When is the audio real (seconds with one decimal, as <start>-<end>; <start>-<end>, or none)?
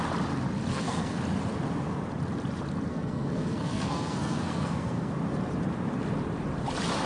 0.0-0.7; 1.2-2.9; 5.1-7.1